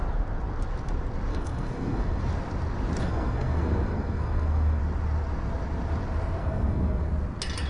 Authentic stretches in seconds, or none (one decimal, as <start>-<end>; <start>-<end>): 0.0-1.3; 2.2-3.0; 4.8-6.4; 7.1-7.7